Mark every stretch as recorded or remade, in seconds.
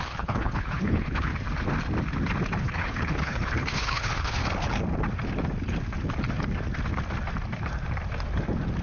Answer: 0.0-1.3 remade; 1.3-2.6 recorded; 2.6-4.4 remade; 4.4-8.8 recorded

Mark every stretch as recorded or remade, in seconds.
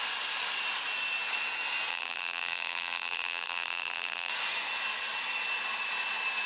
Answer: 0.0-1.9 recorded; 1.9-4.3 remade; 4.3-6.5 recorded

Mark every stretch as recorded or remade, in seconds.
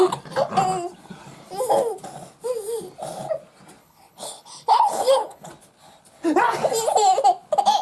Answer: 0.0-3.8 recorded; 3.8-5.5 remade; 5.5-7.8 recorded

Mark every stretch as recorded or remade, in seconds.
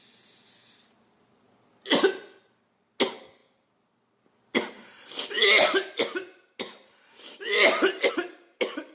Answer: 0.0-8.9 recorded